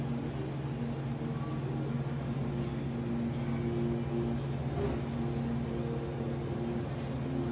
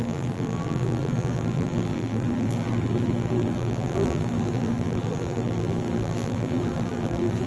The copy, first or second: second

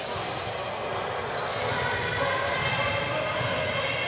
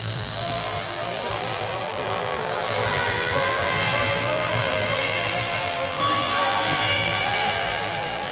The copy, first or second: second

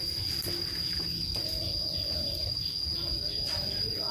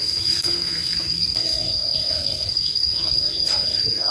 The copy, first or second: second